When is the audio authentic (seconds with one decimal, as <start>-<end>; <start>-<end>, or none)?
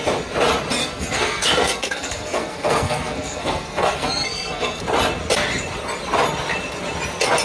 0.0-0.8; 4.8-7.4